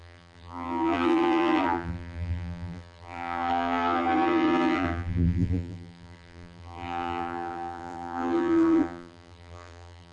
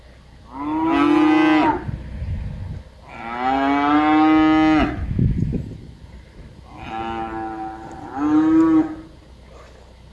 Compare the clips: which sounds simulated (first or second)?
first